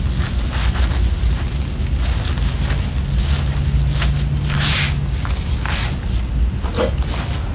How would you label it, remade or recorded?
recorded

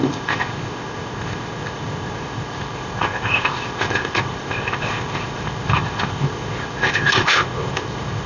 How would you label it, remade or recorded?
remade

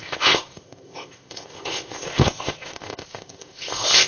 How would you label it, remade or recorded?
remade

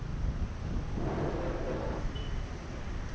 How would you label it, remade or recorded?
recorded